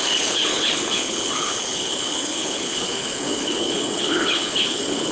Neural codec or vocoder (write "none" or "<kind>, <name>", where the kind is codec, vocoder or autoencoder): codec, HILCodec